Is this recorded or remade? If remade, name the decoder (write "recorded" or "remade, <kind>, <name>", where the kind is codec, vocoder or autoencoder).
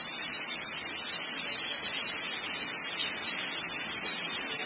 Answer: recorded